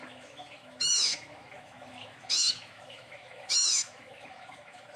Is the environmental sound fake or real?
fake